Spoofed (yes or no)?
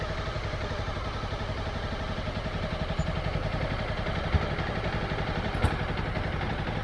no